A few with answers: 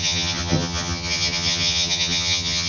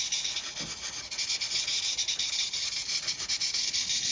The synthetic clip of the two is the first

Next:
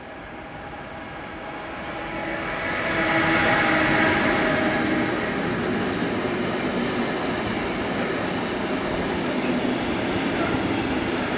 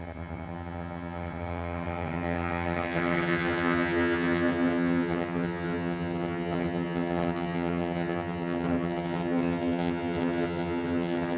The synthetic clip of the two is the second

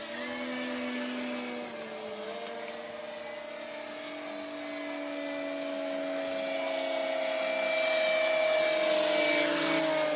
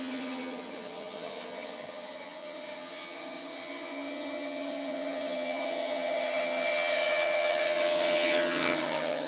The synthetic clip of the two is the second